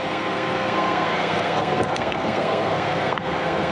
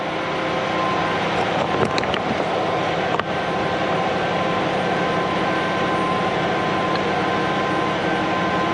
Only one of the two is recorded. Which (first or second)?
second